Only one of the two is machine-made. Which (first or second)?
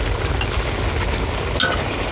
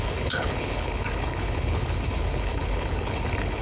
second